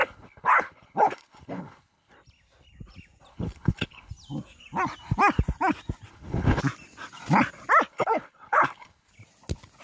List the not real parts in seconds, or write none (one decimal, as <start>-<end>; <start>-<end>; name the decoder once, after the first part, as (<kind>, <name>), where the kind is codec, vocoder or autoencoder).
0.0-2.1 (codec, HILCodec); 3.3-4.1; 6.1-6.6; 7.9-9.1